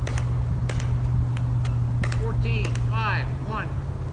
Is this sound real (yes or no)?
yes